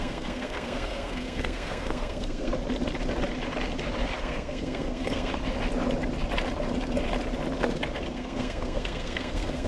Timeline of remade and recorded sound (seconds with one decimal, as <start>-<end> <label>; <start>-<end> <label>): 0.0-2.5 remade; 2.5-4.2 recorded; 4.2-5.3 remade; 5.3-8.1 recorded; 8.1-9.7 remade

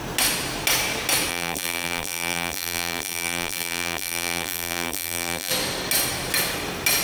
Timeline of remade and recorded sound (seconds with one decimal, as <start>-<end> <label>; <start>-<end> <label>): 0.0-1.3 recorded; 1.3-5.5 remade; 5.5-7.0 recorded

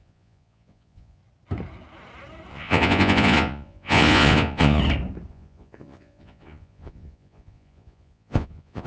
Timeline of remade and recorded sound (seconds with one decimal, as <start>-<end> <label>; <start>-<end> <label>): 0.0-1.2 remade; 1.2-2.5 recorded; 2.5-4.8 remade; 4.8-5.3 recorded; 5.3-8.9 remade

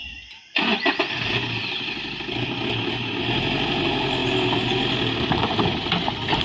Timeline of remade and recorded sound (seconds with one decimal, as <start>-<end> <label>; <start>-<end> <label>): 0.0-6.4 recorded

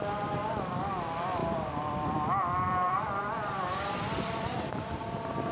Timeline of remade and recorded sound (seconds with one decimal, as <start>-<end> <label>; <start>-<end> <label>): 0.0-1.4 recorded; 1.4-4.7 remade; 4.7-5.5 recorded